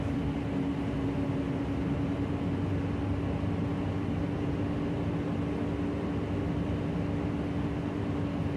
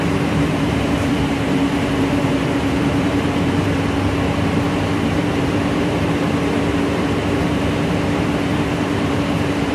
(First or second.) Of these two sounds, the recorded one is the first